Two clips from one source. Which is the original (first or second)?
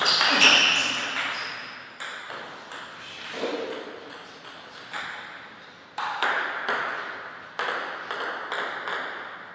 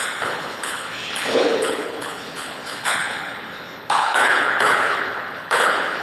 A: first